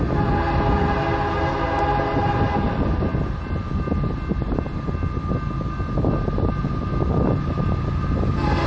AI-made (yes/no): no